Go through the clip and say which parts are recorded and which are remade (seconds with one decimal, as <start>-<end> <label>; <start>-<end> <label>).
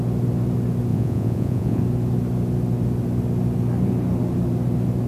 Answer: 0.0-0.9 recorded; 0.9-1.8 remade; 1.8-5.1 recorded